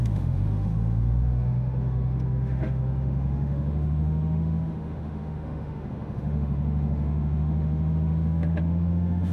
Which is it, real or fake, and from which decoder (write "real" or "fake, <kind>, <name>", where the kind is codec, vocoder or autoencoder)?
fake, autoencoder, DAC-VAE